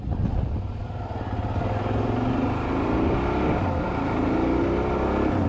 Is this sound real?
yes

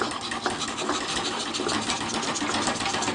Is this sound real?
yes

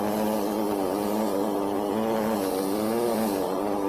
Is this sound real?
yes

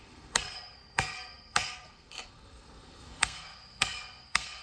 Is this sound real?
no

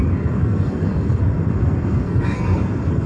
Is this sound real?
no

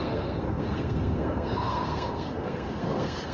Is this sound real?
no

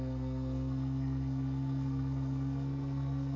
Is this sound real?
no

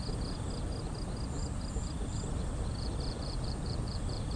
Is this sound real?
yes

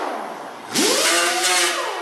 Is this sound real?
yes